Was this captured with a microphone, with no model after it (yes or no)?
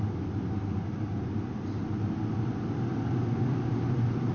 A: yes